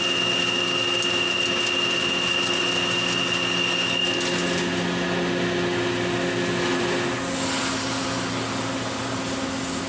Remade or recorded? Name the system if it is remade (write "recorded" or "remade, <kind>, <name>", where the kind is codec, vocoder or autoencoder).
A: recorded